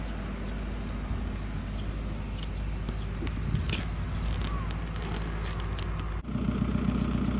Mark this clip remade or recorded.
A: recorded